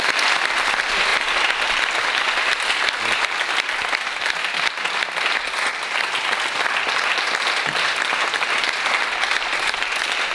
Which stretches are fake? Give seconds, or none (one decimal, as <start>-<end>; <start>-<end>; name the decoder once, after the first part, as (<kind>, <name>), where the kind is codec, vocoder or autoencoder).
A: none